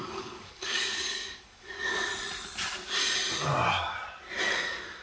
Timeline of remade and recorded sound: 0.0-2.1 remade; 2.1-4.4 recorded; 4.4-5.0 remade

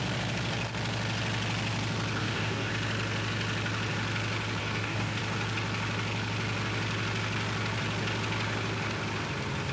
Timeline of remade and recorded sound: 0.0-2.2 recorded; 2.2-2.7 remade; 2.7-4.6 recorded; 4.6-5.2 remade; 5.2-9.7 recorded

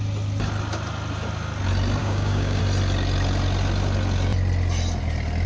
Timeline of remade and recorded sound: 0.0-2.0 recorded; 2.0-2.6 remade; 2.6-5.5 recorded